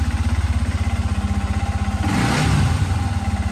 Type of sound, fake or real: real